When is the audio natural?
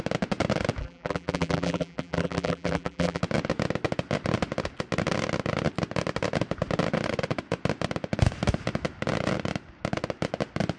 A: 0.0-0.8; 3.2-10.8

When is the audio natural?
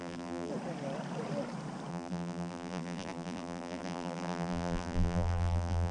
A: 0.5-1.9